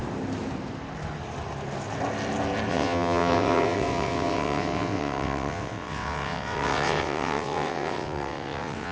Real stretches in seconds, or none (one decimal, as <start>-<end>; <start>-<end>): 0.0-2.7